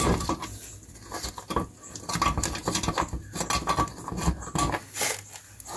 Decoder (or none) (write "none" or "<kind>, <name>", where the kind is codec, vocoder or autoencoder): none